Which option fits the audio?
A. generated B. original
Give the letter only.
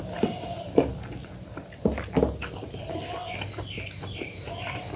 B